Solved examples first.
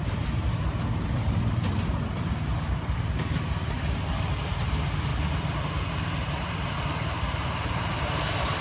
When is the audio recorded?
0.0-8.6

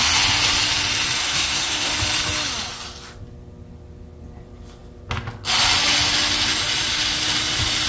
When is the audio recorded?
0.0-1.2; 1.9-7.9

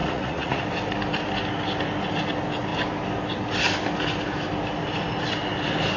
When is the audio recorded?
0.6-6.0

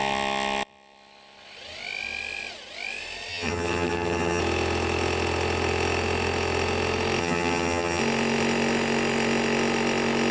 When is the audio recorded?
0.0-3.3; 4.4-7.2; 8.0-10.3

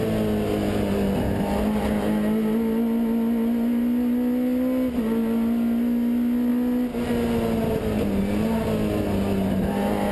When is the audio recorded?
0.0-10.1

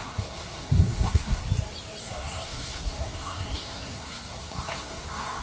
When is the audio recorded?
1.4-2.0

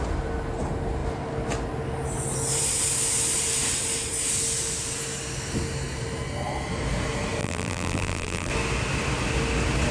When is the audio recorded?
0.0-7.4; 8.5-9.9